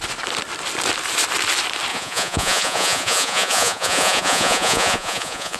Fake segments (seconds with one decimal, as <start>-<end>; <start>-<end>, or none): 1.9-5.6